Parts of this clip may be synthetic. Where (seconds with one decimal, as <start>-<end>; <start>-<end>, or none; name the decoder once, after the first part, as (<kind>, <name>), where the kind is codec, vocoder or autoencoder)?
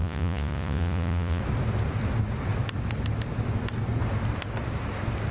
0.0-1.4 (vocoder, Vocos)